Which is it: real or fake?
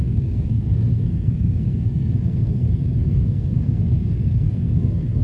fake